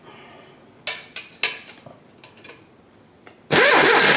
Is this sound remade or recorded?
recorded